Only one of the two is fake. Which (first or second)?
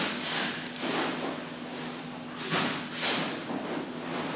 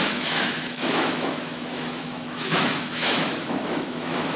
second